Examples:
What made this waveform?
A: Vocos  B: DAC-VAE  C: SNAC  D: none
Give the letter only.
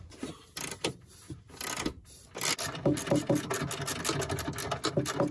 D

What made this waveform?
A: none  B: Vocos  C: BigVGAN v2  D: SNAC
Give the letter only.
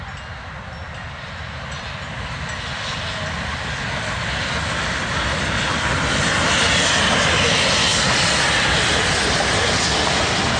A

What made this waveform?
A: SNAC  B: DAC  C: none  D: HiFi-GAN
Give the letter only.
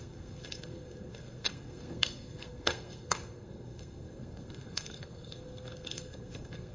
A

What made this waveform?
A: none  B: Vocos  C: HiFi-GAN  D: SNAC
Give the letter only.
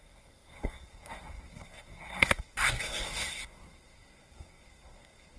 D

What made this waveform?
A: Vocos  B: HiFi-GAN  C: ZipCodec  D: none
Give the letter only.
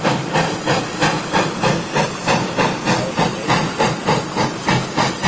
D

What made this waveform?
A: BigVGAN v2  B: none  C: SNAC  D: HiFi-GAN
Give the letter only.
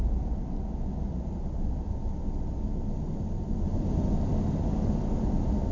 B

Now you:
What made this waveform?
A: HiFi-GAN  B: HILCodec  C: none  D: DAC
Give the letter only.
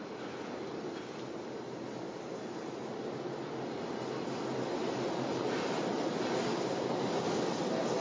C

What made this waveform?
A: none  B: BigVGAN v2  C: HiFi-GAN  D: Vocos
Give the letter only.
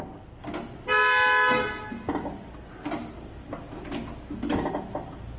A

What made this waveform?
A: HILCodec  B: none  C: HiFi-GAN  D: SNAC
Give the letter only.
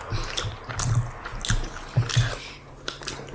B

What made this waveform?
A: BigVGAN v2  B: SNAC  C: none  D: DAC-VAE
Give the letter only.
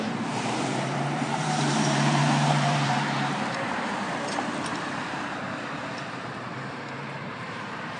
A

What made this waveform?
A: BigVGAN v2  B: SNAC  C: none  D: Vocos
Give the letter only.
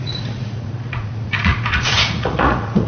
D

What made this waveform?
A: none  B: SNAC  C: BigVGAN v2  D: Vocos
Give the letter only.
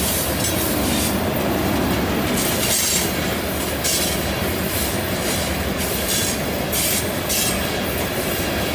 A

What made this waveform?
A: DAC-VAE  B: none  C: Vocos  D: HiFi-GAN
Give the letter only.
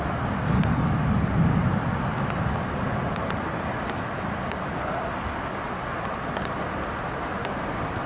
B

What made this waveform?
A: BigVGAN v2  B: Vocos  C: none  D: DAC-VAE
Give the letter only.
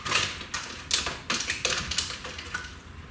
C